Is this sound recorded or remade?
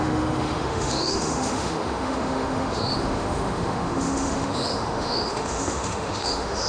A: remade